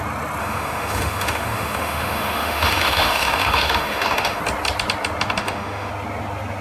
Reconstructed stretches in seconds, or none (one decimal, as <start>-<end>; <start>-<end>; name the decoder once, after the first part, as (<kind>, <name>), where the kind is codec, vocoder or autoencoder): 0.4-4.4 (autoencoder, DAC-VAE); 5.4-5.9